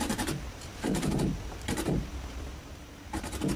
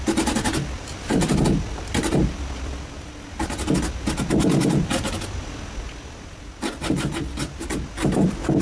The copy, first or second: first